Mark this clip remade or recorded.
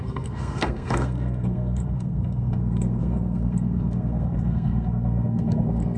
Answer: remade